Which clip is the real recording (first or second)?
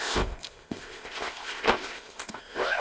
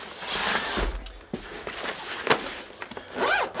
second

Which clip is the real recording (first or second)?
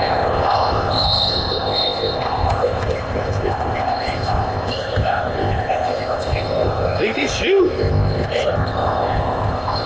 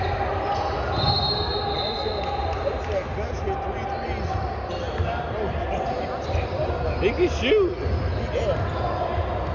second